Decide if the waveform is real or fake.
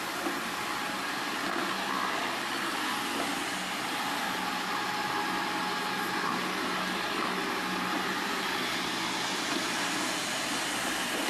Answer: real